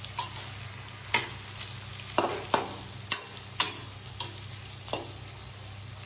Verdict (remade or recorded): recorded